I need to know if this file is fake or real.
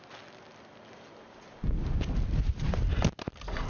real